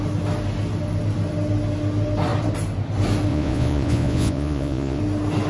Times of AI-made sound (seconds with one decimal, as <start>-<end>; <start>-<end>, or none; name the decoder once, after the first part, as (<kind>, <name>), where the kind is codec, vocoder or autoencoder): 3.3-5.0 (vocoder, Vocos)